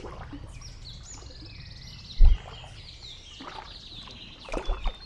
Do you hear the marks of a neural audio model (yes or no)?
no